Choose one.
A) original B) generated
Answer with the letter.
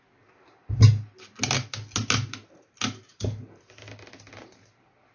A